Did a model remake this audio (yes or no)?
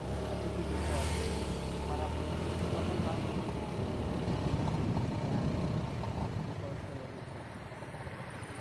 no